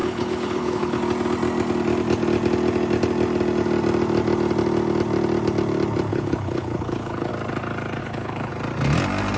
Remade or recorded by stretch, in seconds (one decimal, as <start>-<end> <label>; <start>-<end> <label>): 0.0-1.0 remade; 1.0-6.1 recorded; 6.1-7.3 remade; 7.3-8.0 recorded; 8.0-8.5 remade; 8.5-9.4 recorded